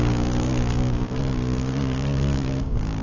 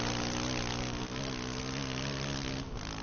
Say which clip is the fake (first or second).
first